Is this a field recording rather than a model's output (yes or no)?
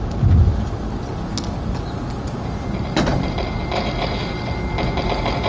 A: yes